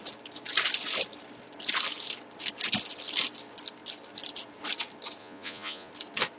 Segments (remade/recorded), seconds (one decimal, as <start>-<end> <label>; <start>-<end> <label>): 0.0-5.2 recorded; 5.2-5.9 remade; 5.9-6.4 recorded